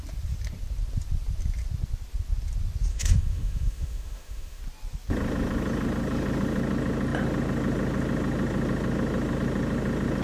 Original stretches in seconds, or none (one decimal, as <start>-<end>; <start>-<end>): 0.0-2.9; 4.6-10.2